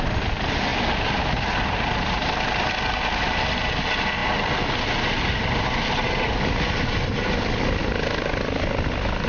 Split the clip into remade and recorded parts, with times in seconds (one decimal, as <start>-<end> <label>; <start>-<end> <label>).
0.0-9.3 recorded